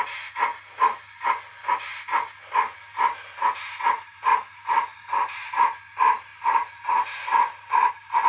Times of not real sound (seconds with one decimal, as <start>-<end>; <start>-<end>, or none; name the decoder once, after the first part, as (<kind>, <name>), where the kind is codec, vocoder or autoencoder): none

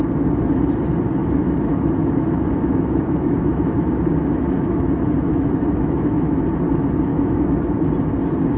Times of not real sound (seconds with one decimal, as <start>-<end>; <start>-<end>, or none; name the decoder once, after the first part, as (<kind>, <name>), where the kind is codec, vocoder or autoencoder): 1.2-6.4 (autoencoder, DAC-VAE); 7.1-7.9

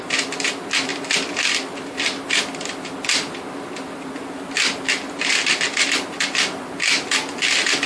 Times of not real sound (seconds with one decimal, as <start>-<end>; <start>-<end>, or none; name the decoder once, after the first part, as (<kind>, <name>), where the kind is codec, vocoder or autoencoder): none

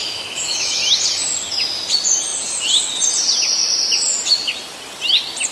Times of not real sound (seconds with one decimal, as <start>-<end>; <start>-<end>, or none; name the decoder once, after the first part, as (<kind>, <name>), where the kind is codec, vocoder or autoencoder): 0.0-0.7 (autoencoder, DAC-VAE)